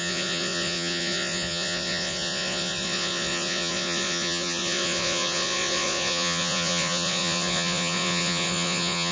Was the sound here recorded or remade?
remade